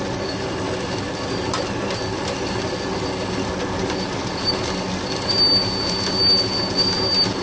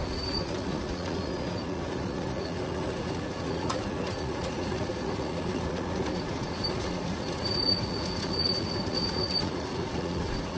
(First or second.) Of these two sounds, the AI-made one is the second